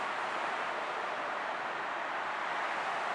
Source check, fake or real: real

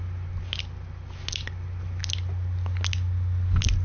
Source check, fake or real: real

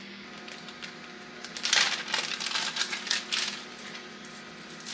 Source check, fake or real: real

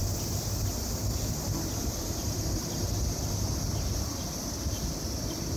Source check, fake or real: real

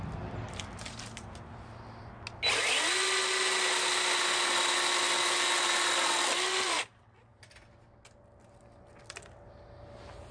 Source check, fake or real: real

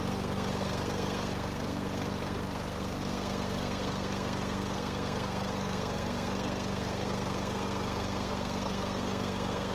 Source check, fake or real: fake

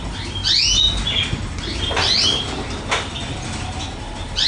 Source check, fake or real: real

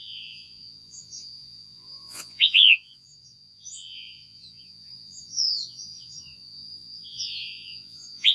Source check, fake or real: fake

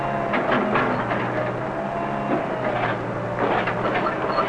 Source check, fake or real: real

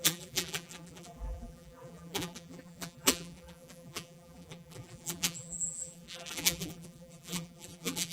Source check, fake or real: fake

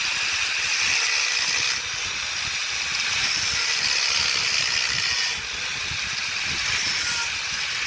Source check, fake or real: real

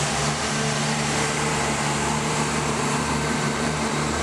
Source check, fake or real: fake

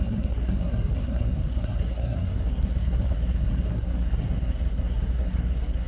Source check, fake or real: fake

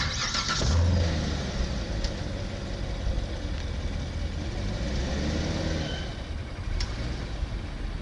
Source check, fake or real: real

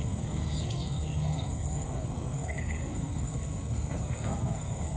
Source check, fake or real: fake